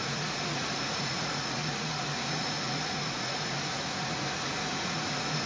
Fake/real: fake